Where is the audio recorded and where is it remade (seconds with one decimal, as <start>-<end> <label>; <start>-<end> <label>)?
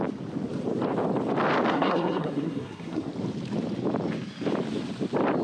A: 0.0-1.7 recorded; 1.7-3.1 remade; 3.1-5.4 recorded